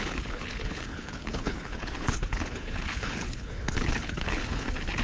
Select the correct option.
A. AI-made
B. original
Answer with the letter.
A